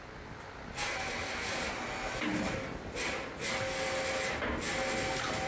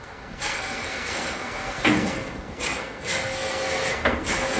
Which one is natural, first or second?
first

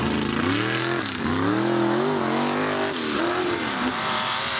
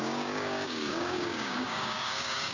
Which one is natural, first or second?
first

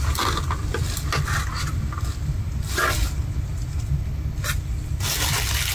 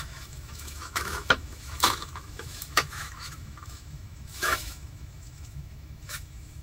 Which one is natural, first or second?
first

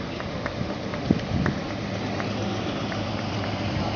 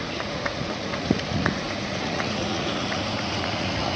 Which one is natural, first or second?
first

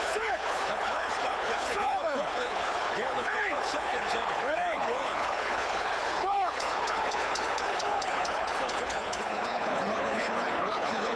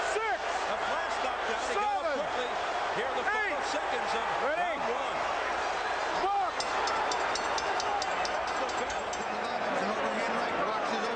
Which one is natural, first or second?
second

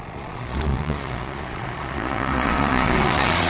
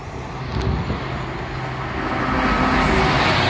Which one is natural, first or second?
second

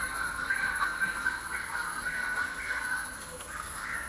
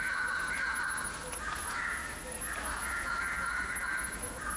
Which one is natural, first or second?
second